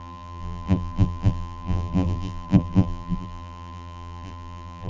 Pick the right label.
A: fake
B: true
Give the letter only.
A